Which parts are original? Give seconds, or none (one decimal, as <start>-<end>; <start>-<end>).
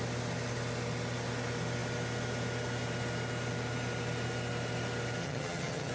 0.0-5.2